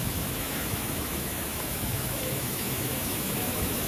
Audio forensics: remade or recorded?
remade